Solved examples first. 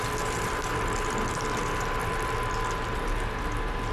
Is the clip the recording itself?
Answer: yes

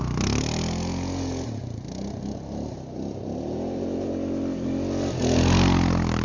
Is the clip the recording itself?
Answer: yes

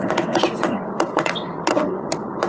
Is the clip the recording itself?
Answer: no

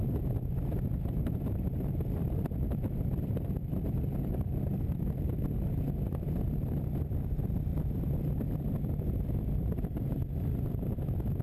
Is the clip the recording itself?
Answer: no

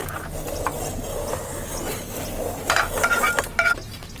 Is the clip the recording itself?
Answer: yes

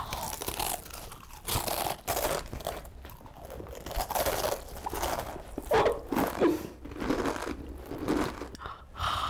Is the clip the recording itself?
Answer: yes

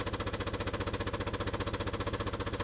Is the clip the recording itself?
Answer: yes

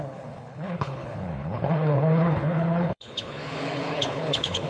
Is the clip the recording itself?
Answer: no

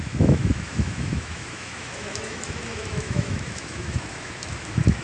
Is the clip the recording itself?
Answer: no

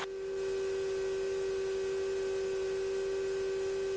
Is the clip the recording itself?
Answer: yes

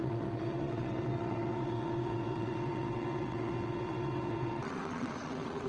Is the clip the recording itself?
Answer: no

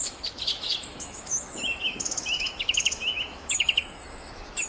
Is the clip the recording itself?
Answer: no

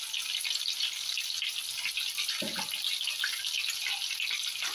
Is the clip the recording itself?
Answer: yes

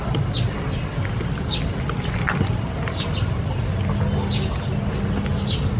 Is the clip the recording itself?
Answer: yes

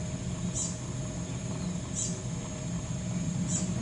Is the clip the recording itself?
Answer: yes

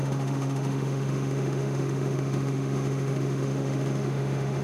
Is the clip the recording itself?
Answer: no